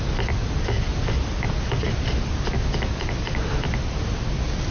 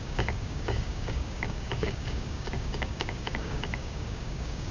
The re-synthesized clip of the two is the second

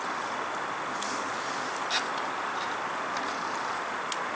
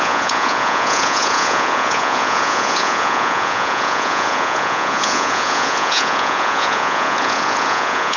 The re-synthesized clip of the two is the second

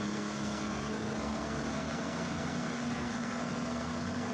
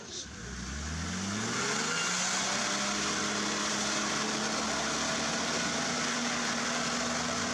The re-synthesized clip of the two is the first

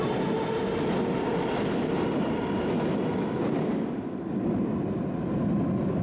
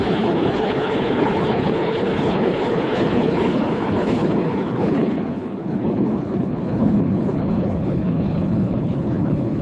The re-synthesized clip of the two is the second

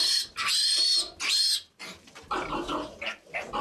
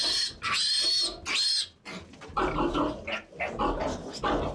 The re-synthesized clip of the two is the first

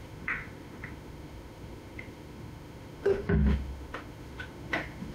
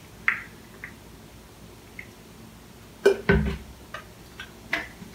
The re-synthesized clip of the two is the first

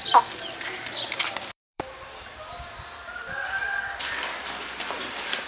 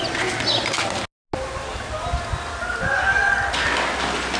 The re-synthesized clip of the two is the first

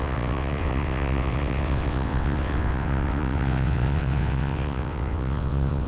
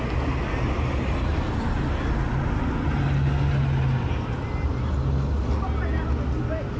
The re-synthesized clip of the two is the first